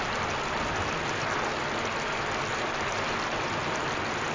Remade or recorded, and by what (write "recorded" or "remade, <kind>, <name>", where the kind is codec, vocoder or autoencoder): recorded